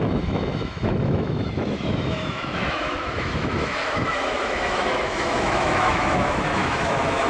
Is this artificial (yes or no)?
yes